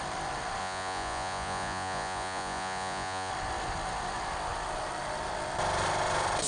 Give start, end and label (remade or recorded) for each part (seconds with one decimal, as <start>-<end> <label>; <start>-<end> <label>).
0.0-0.6 recorded; 0.6-3.3 remade; 3.3-6.5 recorded